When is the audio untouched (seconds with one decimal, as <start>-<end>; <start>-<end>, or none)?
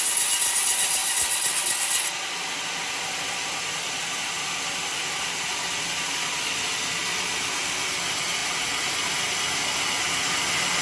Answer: 0.0-10.8